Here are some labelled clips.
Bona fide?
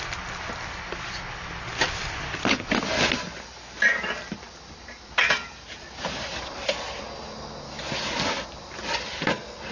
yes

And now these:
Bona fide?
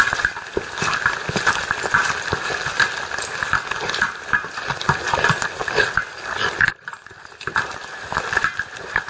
yes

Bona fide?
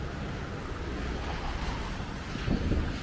yes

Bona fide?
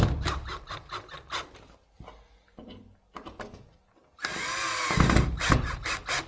yes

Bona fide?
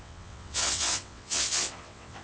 no